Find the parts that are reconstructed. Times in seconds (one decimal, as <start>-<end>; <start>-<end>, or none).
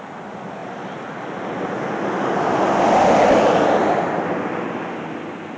none